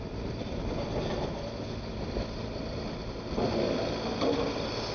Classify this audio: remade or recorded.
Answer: recorded